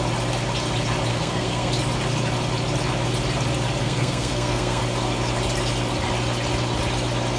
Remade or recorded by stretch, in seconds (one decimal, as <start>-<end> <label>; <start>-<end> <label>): 0.0-1.1 recorded; 1.1-1.7 remade; 1.7-3.8 recorded; 3.8-4.8 remade; 4.8-7.4 recorded